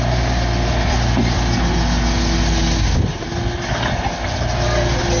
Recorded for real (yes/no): yes